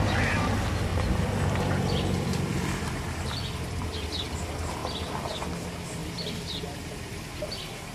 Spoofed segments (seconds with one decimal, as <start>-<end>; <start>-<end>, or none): 0.9-3.8; 6.0-6.9